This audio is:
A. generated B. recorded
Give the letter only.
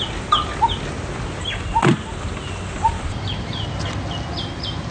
B